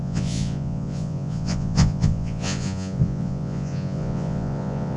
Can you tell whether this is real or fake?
fake